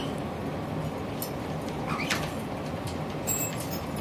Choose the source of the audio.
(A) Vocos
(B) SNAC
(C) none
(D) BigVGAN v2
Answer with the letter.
C